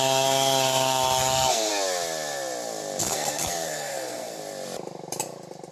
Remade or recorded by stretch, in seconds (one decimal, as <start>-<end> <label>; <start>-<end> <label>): 0.0-1.7 remade; 1.7-3.0 recorded; 3.0-4.4 remade; 4.4-5.7 recorded